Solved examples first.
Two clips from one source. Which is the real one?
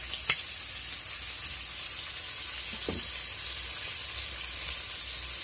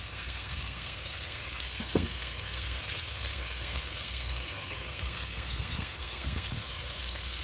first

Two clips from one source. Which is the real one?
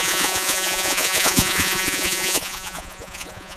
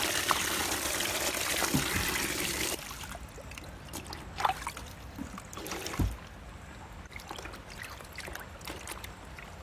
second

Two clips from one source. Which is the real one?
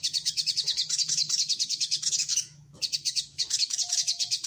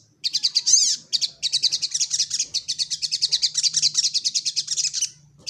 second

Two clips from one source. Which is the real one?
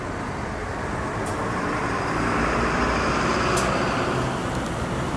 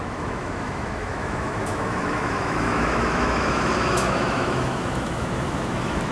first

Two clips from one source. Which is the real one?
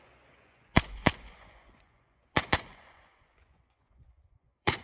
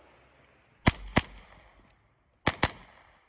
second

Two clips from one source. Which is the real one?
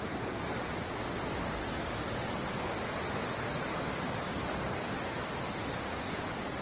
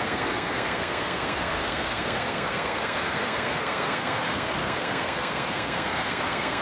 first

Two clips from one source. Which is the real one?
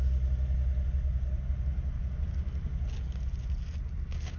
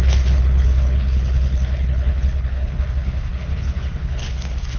first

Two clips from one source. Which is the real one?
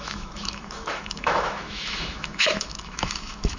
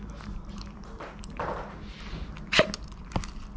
second